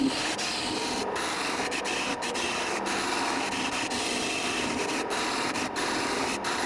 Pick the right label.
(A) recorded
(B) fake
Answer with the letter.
B